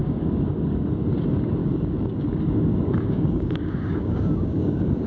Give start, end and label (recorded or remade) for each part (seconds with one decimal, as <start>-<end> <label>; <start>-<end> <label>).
0.0-0.9 remade; 0.9-1.6 recorded; 1.6-5.1 remade